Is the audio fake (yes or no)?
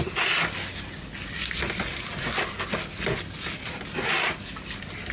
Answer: no